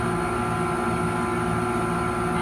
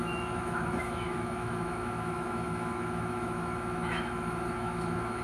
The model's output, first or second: second